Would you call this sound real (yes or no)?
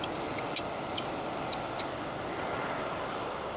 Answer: yes